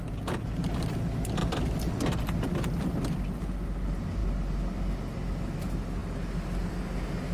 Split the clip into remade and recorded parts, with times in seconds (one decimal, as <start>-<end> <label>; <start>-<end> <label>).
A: 0.0-1.4 recorded; 1.4-2.5 remade; 2.5-7.3 recorded